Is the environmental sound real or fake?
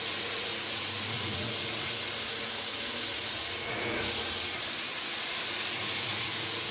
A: fake